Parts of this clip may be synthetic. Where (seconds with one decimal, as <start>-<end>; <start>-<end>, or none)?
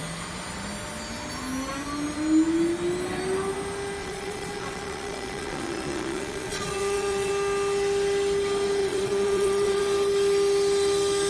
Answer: 4.0-7.3; 8.8-9.8